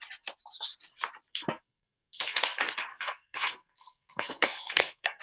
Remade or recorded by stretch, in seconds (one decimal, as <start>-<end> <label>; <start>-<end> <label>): 0.0-1.3 recorded; 1.3-2.4 remade; 2.4-2.9 recorded; 2.9-5.2 remade